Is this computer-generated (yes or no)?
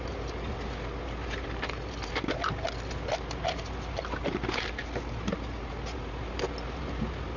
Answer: no